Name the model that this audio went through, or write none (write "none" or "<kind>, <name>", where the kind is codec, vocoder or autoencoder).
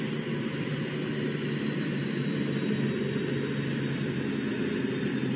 none